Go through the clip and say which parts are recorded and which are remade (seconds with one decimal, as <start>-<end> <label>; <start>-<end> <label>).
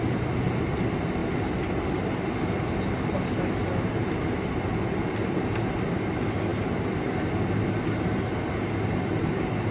0.0-9.7 recorded